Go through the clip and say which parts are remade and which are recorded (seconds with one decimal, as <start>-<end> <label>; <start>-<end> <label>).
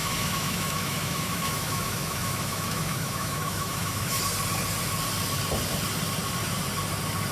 0.0-4.2 remade; 4.2-7.3 recorded